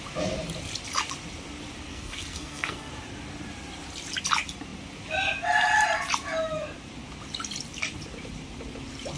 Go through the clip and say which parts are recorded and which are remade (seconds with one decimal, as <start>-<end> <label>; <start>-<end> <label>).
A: 0.0-1.9 recorded; 1.9-2.9 remade; 2.9-9.2 recorded